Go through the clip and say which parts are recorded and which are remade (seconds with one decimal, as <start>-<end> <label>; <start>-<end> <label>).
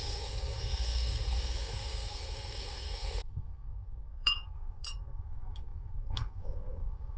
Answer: 0.0-7.2 remade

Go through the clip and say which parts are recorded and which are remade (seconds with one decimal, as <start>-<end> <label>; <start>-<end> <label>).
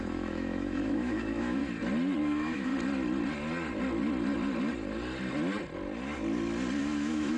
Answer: 0.0-1.6 remade; 1.6-2.2 recorded; 2.2-2.7 remade; 2.7-6.8 recorded; 6.8-7.4 remade